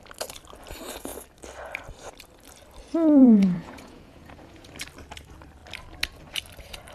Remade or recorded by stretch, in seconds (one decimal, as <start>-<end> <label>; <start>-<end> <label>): 0.0-3.2 recorded; 3.2-4.7 remade; 4.7-6.9 recorded